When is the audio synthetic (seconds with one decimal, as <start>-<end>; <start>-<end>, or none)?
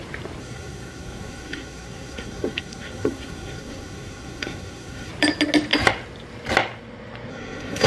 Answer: 0.4-5.1; 7.3-7.9